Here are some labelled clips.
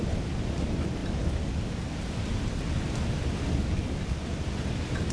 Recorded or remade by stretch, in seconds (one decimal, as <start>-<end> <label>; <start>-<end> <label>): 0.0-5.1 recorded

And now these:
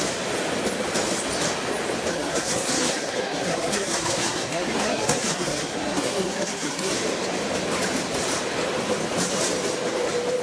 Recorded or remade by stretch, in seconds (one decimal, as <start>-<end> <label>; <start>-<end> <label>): 0.0-2.1 recorded; 2.1-6.9 remade; 6.9-10.4 recorded

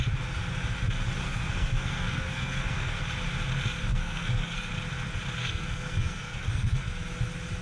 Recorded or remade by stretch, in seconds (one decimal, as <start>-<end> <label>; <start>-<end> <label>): 0.0-1.2 recorded; 1.2-3.0 remade; 3.0-3.9 recorded; 3.9-4.7 remade; 4.7-5.4 recorded; 5.4-6.9 remade; 6.9-7.6 recorded

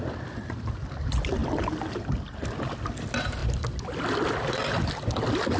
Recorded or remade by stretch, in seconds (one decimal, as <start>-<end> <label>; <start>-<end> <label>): 0.0-5.6 recorded

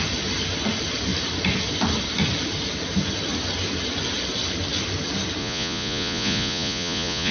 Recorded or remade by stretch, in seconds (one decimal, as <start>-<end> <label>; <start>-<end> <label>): 0.0-5.4 recorded; 5.4-7.3 remade

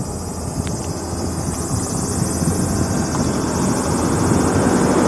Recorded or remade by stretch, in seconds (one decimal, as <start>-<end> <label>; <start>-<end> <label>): 0.0-5.1 recorded

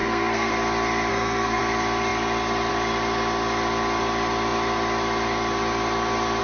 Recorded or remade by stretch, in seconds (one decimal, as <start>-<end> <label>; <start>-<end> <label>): 0.0-0.5 remade; 0.5-1.1 recorded; 1.1-1.6 remade; 1.6-6.4 recorded